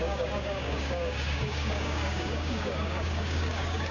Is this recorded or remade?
remade